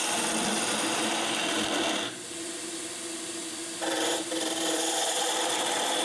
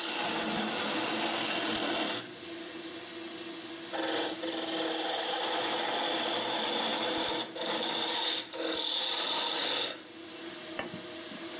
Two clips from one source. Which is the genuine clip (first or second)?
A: second